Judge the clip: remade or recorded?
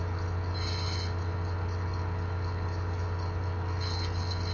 recorded